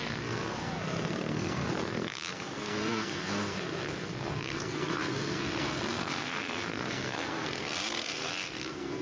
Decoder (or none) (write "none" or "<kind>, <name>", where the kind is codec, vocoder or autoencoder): codec, SNAC